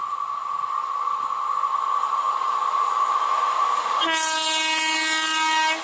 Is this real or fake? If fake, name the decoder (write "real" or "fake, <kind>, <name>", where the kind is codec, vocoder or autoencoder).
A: real